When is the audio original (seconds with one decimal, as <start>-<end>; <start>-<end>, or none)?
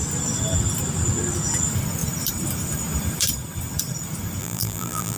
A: 0.0-4.4